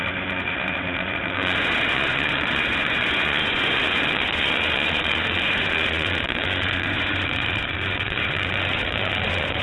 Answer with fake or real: fake